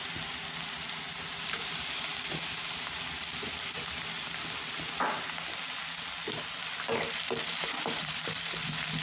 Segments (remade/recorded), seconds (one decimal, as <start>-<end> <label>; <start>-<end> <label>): 0.0-2.1 remade; 2.1-6.6 recorded; 6.6-9.0 remade